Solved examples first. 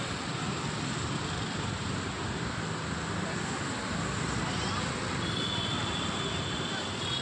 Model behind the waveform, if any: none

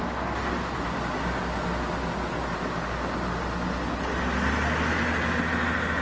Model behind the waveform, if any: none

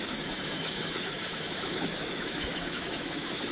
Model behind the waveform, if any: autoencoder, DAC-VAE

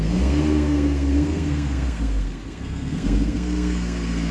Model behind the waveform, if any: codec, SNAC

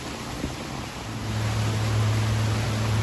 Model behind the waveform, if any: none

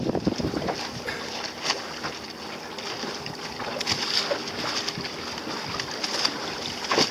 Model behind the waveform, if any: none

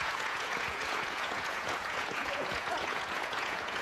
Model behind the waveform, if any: vocoder, Vocos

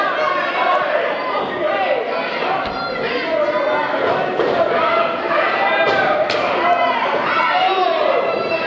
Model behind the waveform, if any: none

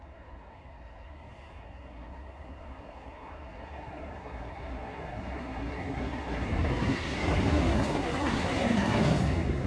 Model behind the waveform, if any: codec, SNAC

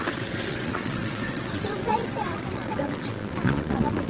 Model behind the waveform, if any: vocoder, WaveNeXt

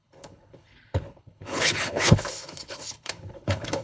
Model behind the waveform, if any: codec, HILCodec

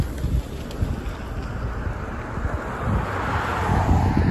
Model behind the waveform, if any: none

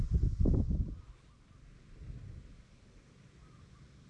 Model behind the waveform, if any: none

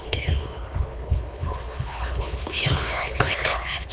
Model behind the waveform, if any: codec, HILCodec